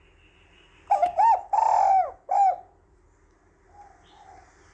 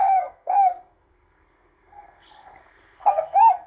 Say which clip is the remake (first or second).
second